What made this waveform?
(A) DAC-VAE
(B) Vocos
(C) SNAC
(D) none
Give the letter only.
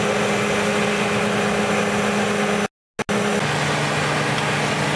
D